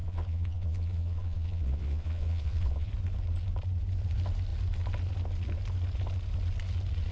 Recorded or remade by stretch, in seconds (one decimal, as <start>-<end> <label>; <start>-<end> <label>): 0.0-2.9 remade; 2.9-7.1 recorded